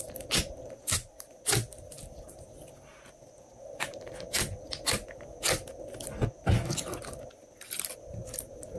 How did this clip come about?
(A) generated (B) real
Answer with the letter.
B